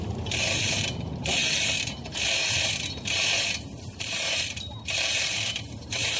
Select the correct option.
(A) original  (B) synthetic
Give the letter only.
B